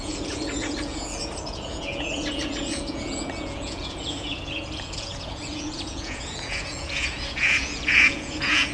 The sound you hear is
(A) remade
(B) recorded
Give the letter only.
A